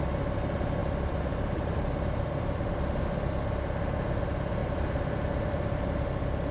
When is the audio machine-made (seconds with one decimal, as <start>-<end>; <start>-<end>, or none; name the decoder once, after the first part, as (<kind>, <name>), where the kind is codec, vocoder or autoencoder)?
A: 0.8-3.0 (vocoder, BigVGAN v2); 4.6-6.1